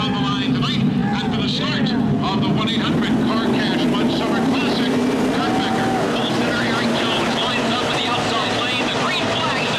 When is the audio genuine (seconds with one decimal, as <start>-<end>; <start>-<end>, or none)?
0.0-9.8